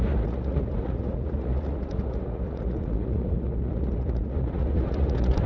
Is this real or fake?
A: fake